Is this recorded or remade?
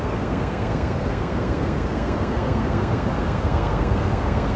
remade